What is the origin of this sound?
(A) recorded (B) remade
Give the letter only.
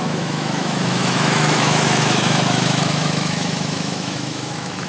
B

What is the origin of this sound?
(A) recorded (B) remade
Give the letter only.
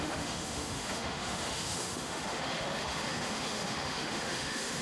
B